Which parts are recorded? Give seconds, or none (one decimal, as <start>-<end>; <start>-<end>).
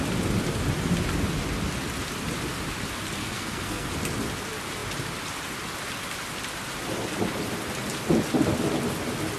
0.0-3.2; 3.9-9.4